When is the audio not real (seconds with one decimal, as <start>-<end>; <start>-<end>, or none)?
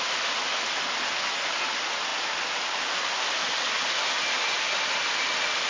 none